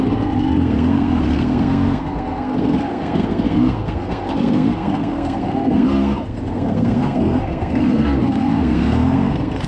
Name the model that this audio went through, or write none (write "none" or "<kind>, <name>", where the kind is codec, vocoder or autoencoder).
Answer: codec, SNAC